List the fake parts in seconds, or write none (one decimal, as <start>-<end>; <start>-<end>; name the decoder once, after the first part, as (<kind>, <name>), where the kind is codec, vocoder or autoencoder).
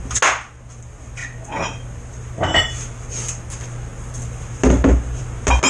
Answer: none